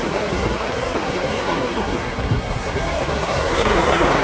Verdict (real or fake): fake